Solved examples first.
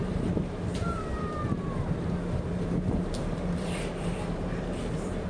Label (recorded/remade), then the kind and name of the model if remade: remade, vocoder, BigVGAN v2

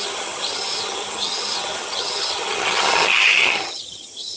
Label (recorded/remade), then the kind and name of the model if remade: remade, vocoder, HiFi-GAN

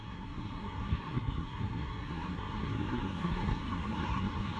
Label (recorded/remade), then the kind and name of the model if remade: remade, codec, SNAC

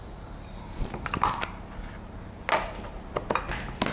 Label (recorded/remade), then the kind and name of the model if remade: recorded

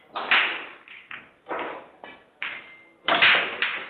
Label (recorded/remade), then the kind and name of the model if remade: recorded